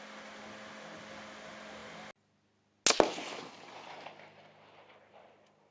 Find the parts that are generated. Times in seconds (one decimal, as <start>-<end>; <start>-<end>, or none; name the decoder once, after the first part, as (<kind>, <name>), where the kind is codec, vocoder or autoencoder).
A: none